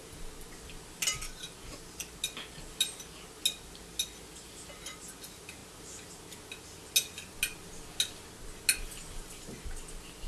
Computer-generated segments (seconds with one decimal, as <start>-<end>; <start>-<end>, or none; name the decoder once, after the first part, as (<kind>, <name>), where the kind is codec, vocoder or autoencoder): none